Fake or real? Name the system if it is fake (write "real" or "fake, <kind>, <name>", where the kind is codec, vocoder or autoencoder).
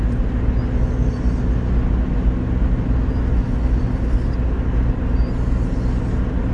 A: real